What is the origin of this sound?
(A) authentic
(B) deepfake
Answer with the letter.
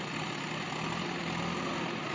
A